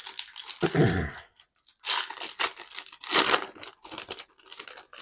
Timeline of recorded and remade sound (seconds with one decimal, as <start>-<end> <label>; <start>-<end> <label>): 0.0-5.0 recorded